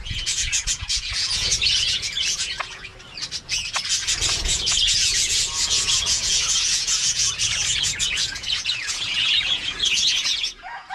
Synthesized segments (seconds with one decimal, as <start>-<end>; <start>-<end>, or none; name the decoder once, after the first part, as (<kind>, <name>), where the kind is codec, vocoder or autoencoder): 0.0-2.9 (vocoder, Vocos); 4.4-10.9